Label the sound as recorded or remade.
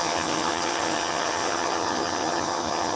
remade